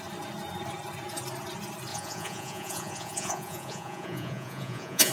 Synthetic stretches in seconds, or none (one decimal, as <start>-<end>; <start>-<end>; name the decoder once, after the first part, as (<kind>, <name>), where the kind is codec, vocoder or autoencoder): 1.9-5.1 (vocoder, Vocos)